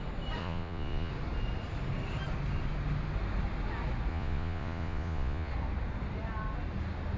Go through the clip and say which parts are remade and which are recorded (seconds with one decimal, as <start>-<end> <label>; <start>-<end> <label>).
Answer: 0.0-0.4 recorded; 0.4-1.1 remade; 1.1-4.1 recorded; 4.1-5.5 remade; 5.5-7.2 recorded